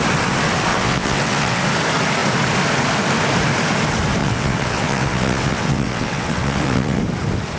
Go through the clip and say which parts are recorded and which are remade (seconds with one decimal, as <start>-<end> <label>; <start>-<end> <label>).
0.0-0.7 recorded; 0.7-1.6 remade; 1.6-4.2 recorded; 4.2-7.0 remade; 7.0-7.6 recorded